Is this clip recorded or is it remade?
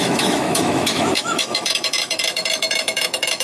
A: remade